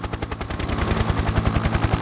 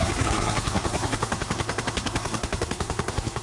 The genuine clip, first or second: first